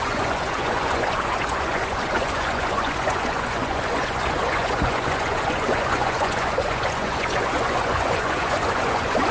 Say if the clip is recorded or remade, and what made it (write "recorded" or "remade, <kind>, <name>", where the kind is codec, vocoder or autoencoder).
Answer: remade, vocoder, Vocos